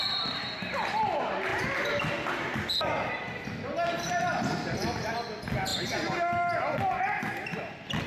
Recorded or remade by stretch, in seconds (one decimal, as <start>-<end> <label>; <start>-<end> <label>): 0.0-8.1 recorded